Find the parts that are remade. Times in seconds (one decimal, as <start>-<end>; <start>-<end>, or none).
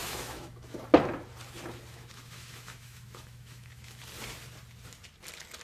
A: 0.0-0.8; 1.9-4.0